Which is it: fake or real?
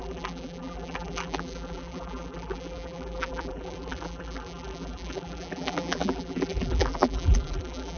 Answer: fake